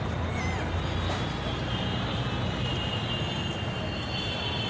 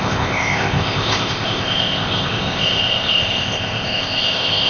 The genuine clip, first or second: first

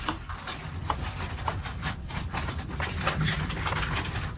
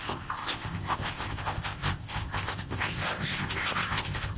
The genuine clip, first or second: first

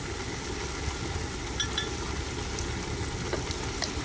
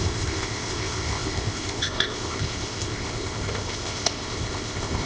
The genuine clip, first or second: first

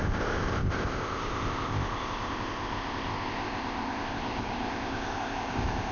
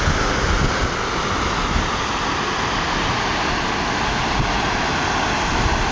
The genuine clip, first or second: second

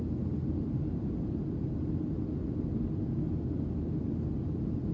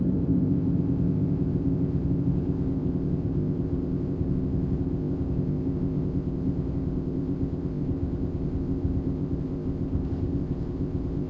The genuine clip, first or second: first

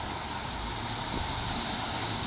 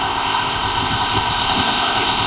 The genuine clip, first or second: first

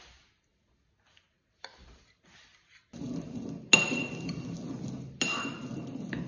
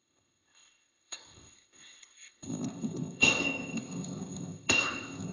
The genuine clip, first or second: first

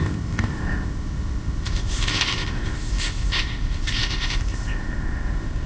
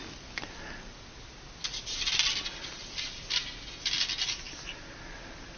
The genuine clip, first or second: second